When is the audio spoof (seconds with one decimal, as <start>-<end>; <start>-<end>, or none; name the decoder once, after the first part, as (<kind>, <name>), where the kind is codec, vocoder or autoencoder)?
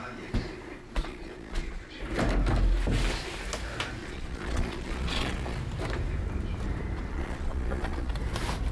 0.8-2.0 (vocoder, Vocos); 4.0-5.6; 7.1-8.1